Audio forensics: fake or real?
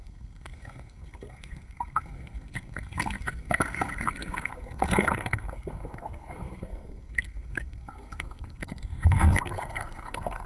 fake